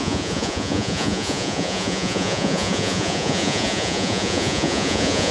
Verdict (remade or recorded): remade